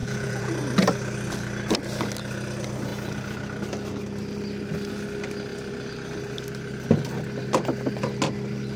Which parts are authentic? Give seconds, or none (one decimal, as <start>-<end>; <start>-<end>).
0.5-8.8